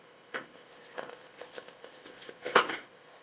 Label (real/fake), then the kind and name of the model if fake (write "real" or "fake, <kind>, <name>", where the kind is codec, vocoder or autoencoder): fake, codec, ZipCodec